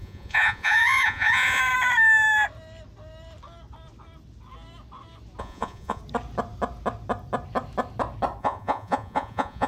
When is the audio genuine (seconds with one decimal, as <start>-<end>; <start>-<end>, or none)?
1.6-5.4; 6.0-8.4